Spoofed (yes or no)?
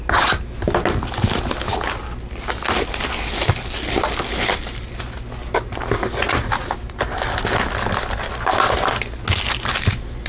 no